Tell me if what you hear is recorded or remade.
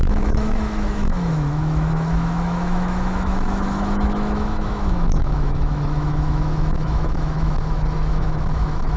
remade